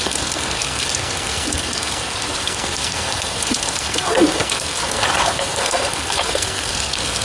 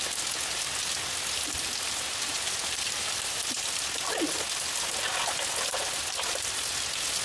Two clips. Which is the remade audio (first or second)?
first